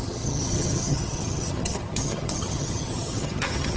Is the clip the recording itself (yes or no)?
no